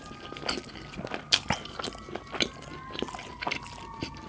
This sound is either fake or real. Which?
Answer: real